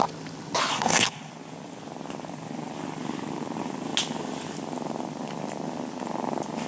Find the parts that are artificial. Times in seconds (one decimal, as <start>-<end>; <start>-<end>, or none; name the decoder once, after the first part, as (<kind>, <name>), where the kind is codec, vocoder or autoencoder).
0.7-1.3 (codec, SNAC)